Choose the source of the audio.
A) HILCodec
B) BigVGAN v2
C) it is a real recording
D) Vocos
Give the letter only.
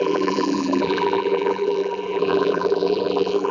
B